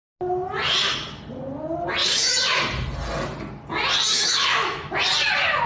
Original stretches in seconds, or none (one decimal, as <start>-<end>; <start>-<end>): 0.0-2.0; 2.6-4.1; 4.9-5.7

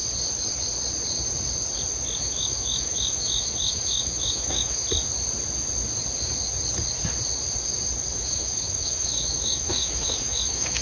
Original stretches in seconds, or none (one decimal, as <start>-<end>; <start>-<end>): 0.0-2.2; 4.8-8.1

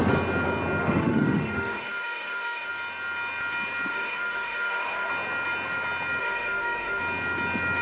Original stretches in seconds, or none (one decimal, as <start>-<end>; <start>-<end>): 0.0-0.8; 2.7-3.9; 5.1-6.2; 7.0-7.8

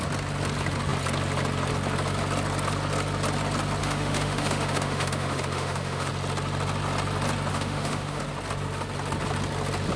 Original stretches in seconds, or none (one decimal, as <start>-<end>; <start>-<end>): 0.0-3.8; 6.1-7.5; 8.2-10.0

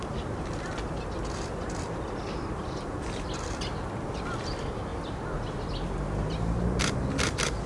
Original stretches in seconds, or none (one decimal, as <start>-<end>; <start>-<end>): 0.0-7.7

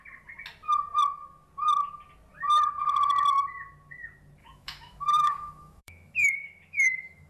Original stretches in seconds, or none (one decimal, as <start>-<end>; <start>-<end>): 0.0-4.4

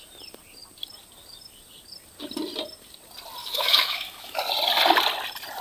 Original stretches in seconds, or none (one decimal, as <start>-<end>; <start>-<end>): 0.0-3.4; 4.4-5.6